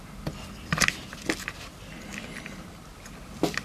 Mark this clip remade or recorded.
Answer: recorded